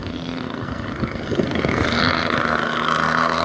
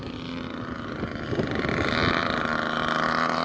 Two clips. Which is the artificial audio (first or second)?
first